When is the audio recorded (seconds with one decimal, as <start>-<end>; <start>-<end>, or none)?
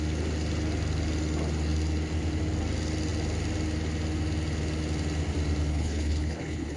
0.0-5.7